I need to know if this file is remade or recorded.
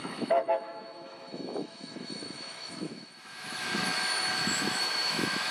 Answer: remade